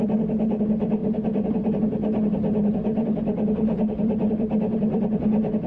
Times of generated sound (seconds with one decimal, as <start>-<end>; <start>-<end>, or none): 1.0-1.7; 2.9-5.0